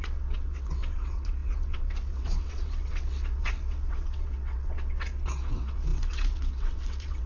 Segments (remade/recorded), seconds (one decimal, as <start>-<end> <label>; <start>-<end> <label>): 0.0-7.3 remade